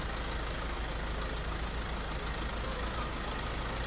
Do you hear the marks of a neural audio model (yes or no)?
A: no